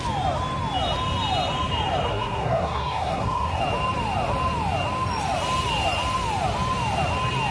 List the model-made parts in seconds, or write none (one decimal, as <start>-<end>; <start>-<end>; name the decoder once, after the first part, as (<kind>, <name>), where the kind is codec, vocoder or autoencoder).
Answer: 2.1-3.6 (codec, SNAC)